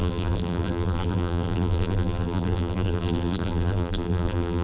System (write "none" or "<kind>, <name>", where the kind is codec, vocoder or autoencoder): vocoder, BigVGAN v2